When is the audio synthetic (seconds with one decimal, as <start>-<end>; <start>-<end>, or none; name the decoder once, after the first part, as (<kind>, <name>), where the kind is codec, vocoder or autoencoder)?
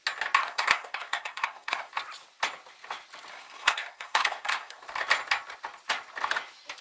0.4-1.9 (codec, SNAC); 3.3-4.8